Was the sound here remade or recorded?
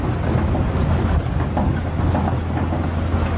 recorded